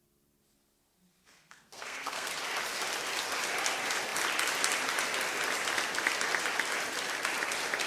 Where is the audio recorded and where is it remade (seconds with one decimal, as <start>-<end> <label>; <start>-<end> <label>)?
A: 0.0-1.2 recorded; 1.2-2.3 remade; 2.3-7.9 recorded